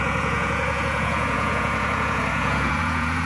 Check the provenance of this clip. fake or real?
fake